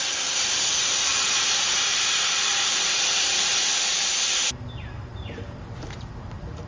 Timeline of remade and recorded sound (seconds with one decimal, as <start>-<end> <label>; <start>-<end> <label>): 0.0-6.7 remade